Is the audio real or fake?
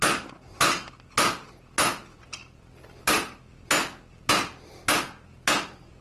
real